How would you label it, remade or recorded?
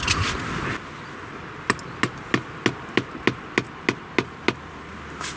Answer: recorded